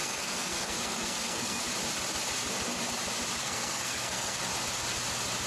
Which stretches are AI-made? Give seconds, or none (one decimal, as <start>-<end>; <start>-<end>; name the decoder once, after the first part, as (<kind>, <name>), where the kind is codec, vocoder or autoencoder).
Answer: 0.0-1.6 (codec, SNAC); 3.4-4.4